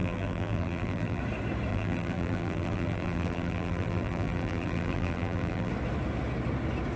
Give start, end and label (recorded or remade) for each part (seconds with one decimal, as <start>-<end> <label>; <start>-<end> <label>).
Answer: 0.0-1.2 remade; 1.2-1.7 recorded; 1.7-5.7 remade; 5.7-7.0 recorded